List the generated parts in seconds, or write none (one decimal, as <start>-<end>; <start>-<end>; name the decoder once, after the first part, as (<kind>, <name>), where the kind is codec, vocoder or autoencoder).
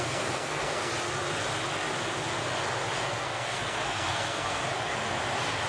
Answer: 0.0-0.9 (codec, SNAC); 3.1-4.6